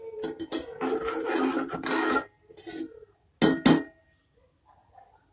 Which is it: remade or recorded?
recorded